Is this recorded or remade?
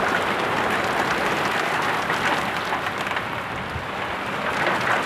recorded